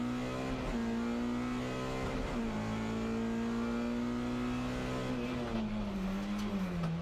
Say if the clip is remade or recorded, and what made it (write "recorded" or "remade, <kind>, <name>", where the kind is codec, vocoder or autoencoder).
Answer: recorded